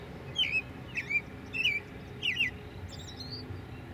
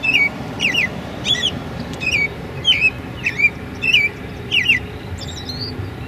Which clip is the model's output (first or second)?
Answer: second